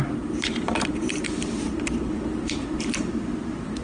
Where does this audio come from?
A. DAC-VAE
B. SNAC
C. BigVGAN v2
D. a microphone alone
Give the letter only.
C